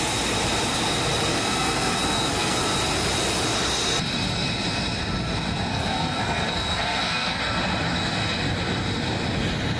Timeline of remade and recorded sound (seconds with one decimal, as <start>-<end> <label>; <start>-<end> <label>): 0.0-1.3 recorded; 1.3-2.6 remade; 2.6-5.7 recorded; 5.7-7.4 remade; 7.4-9.8 recorded